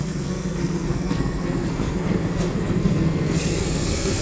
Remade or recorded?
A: remade